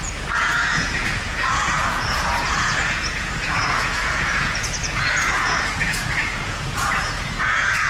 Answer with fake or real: fake